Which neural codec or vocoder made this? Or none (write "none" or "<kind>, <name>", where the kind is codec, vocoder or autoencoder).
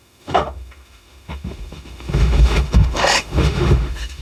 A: autoencoder, DAC-VAE